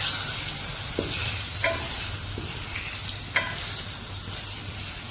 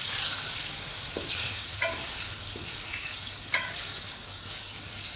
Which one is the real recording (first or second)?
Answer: first